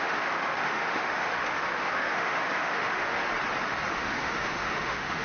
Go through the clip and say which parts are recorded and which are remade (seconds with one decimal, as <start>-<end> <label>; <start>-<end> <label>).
0.0-3.2 remade; 3.2-3.9 recorded; 3.9-5.2 remade

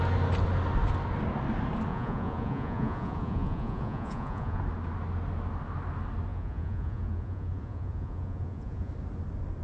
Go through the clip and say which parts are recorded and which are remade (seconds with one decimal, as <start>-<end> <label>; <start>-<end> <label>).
0.0-1.9 recorded; 1.9-4.6 remade; 4.6-6.3 recorded; 6.3-8.9 remade; 8.9-9.6 recorded

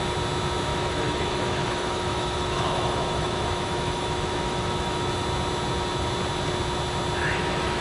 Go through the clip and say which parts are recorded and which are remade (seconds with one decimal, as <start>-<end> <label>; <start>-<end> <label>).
0.0-0.7 recorded; 0.7-5.1 remade; 5.1-7.2 recorded; 7.2-7.8 remade

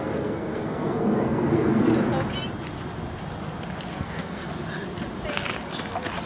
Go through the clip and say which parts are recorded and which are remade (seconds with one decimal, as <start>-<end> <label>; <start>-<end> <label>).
0.0-1.9 remade; 1.9-4.0 recorded; 4.0-4.5 remade; 4.5-6.3 recorded

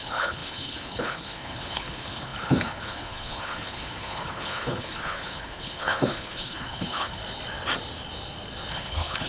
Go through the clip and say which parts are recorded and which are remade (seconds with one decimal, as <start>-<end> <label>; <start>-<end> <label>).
0.0-7.2 remade; 7.2-8.7 recorded; 8.7-9.3 remade

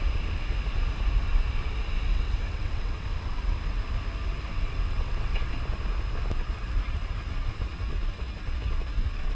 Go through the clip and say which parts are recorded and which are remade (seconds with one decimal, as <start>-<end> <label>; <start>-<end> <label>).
0.0-2.1 recorded; 2.1-3.8 remade; 3.8-4.5 recorded; 4.5-5.5 remade; 5.5-9.3 recorded